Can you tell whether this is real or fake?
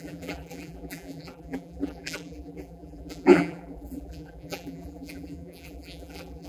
fake